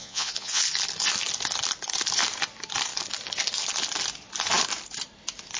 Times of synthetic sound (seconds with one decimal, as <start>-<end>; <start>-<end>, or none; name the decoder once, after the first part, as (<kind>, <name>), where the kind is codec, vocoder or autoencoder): 0.0-0.6 (vocoder, Vocos)